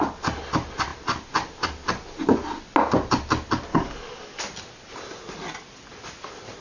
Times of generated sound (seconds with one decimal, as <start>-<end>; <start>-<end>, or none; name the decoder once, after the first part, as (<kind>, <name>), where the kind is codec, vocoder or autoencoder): 3.7-4.4 (codec, DAC)